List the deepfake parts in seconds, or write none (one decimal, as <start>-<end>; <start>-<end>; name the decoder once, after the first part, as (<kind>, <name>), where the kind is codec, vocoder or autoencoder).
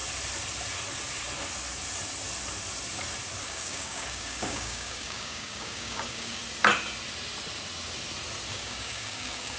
3.4-6.4 (codec, DAC); 8.5-9.6